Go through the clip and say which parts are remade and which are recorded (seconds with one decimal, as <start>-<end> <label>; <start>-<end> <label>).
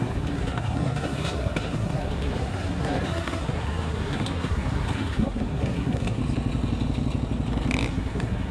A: 0.0-6.2 remade; 6.2-7.9 recorded; 7.9-8.5 remade